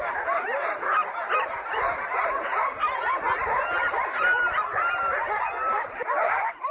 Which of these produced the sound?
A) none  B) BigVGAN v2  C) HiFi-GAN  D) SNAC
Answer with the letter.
A